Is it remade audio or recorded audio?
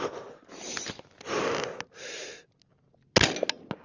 recorded